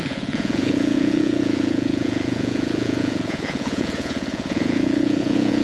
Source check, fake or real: fake